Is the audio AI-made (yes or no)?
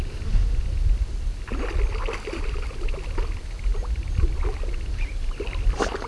no